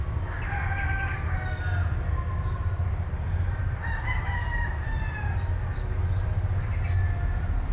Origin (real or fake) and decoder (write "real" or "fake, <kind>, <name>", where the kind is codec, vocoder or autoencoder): real